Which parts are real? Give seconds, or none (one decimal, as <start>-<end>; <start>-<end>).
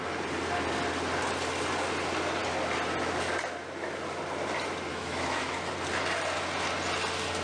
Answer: 0.0-4.9; 5.7-7.4